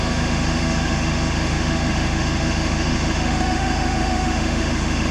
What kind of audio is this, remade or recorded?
remade